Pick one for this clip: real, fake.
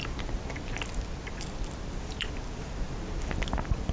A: real